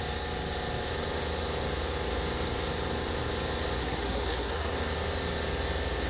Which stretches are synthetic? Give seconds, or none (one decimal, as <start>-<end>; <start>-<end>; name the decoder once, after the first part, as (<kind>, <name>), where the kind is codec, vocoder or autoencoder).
3.8-4.7 (codec, SNAC)